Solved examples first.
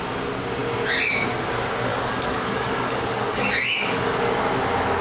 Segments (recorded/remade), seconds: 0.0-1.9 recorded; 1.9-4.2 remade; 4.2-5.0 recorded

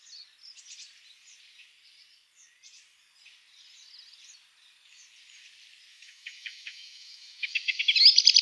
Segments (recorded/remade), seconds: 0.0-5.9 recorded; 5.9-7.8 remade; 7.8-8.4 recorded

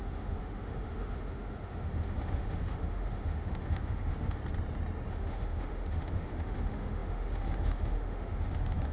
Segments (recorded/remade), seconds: 0.0-4.4 remade; 4.4-5.1 recorded; 5.1-8.9 remade

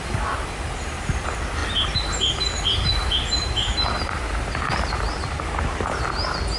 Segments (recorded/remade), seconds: 0.0-6.6 recorded